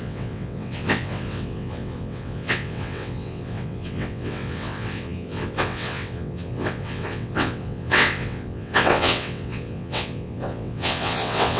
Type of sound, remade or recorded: remade